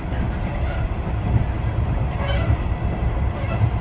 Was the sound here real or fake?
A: fake